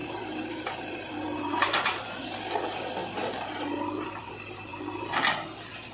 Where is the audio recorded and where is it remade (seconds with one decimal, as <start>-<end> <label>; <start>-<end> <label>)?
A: 0.0-1.1 remade; 1.1-4.7 recorded; 4.7-5.2 remade; 5.2-5.9 recorded